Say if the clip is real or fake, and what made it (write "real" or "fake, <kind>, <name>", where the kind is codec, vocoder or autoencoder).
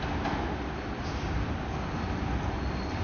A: real